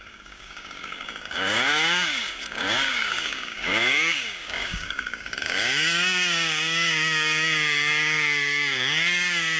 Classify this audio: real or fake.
fake